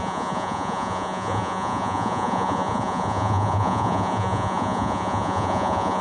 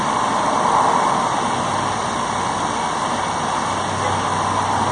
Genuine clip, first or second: second